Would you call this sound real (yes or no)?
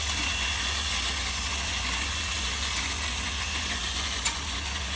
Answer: no